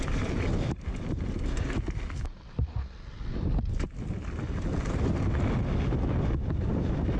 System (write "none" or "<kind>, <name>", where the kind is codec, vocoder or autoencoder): none